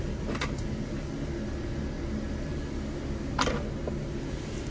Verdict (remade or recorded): recorded